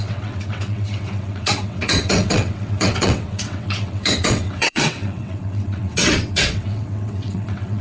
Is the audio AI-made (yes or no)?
yes